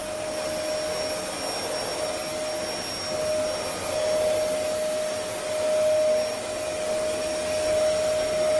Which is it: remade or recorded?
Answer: recorded